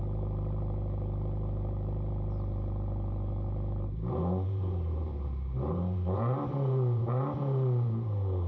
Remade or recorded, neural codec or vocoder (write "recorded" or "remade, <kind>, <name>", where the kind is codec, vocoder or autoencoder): remade, vocoder, BigVGAN v2